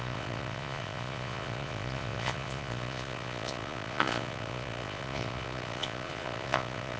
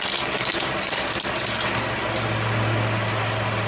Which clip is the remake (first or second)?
first